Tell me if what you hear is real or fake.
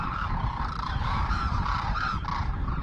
fake